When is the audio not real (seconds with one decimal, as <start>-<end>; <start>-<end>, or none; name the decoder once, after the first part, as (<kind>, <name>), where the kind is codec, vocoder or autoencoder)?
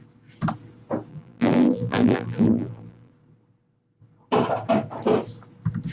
1.1-3.1 (vocoder, BigVGAN v2)